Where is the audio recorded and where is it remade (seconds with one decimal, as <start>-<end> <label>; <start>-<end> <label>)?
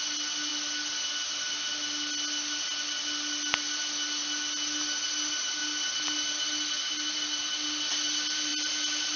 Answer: 0.0-9.2 recorded